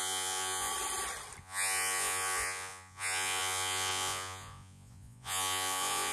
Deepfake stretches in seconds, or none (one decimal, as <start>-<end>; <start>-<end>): 0.0-0.7; 1.4-6.1